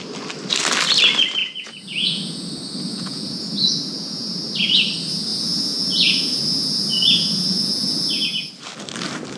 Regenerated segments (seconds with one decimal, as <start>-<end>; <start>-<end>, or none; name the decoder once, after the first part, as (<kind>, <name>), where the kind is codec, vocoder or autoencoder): 1.4-2.5 (vocoder, Vocos); 2.9-4.4; 5.3-8.5